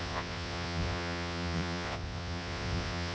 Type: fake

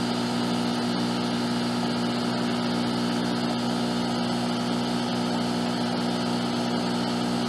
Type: real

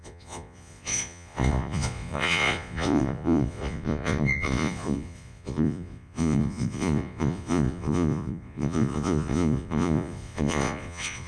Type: fake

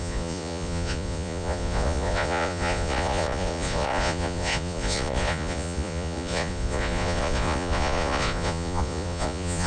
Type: fake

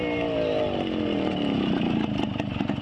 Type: real